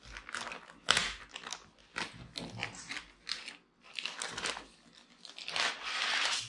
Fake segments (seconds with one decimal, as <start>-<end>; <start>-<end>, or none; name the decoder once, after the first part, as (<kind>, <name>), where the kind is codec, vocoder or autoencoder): 1.0-2.0 (vocoder, BigVGAN v2); 2.6-6.5